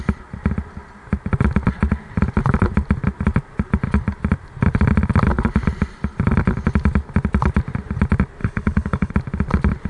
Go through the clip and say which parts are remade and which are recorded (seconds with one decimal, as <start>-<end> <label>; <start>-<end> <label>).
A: 0.0-8.4 recorded; 8.4-9.1 remade; 9.1-9.9 recorded